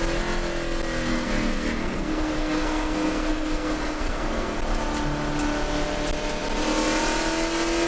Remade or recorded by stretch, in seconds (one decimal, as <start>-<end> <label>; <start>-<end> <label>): 0.0-1.1 recorded; 1.1-4.6 remade; 4.6-7.9 recorded

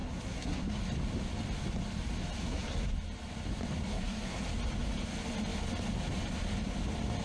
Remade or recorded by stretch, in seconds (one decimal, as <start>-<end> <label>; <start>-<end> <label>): 0.0-0.8 remade; 0.8-2.4 recorded; 2.4-2.9 remade; 2.9-3.9 recorded; 3.9-4.4 remade; 4.4-7.2 recorded

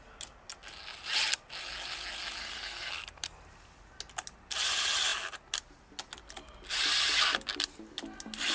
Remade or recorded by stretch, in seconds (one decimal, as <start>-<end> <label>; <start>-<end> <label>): 0.0-2.4 recorded; 2.4-2.9 remade; 2.9-8.5 recorded

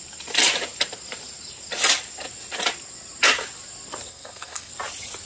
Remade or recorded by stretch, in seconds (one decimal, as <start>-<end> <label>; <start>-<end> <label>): 0.0-4.1 recorded; 4.1-4.7 remade; 4.7-5.3 recorded